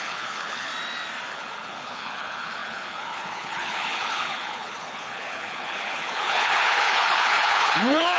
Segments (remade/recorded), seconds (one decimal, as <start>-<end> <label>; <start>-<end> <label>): 0.0-0.7 remade; 0.7-1.3 recorded; 1.3-8.2 remade